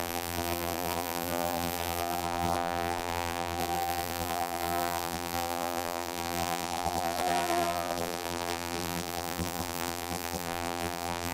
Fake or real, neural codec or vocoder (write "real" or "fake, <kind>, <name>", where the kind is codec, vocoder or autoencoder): fake, vocoder, BigVGAN v2